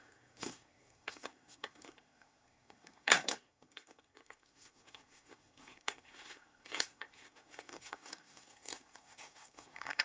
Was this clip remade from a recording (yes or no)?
yes